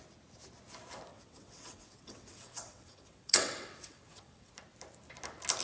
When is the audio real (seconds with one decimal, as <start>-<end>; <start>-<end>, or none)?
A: 0.0-1.1; 4.5-5.6